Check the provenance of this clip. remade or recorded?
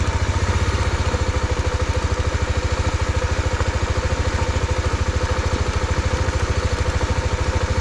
recorded